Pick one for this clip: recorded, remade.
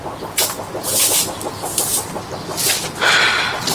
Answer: recorded